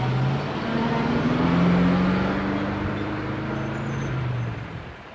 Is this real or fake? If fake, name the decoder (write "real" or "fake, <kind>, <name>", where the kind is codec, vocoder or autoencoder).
real